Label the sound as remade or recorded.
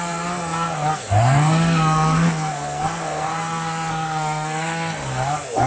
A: remade